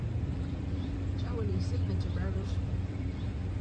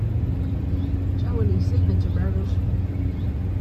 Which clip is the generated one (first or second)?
first